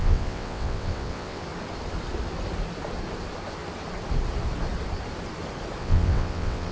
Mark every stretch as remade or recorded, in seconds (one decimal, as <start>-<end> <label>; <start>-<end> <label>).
0.0-1.4 remade; 1.4-5.8 recorded; 5.8-6.7 remade